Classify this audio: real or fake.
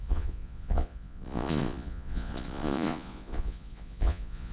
fake